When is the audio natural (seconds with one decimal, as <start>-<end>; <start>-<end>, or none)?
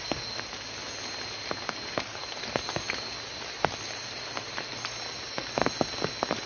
0.0-6.5